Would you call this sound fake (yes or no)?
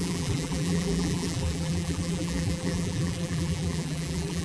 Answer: yes